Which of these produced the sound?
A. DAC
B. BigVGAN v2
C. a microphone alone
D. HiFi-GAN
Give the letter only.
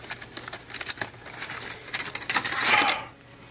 C